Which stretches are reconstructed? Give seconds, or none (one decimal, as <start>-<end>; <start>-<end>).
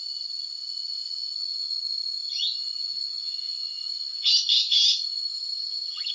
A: 5.3-6.1